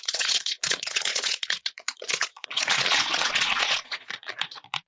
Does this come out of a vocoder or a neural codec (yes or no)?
yes